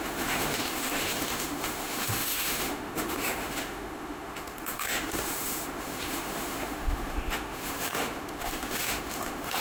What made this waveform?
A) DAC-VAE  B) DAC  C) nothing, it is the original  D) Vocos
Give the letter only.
A